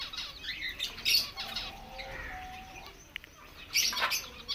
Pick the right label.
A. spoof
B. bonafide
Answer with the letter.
B